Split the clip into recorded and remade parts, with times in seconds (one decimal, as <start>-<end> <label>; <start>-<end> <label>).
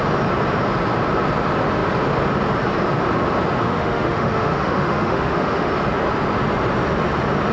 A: 0.0-3.6 recorded; 3.6-5.7 remade; 5.7-7.5 recorded